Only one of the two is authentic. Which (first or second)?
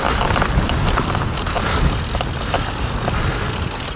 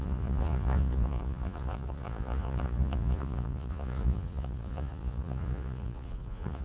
first